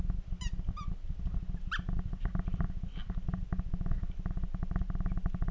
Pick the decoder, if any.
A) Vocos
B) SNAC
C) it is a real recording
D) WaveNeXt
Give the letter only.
C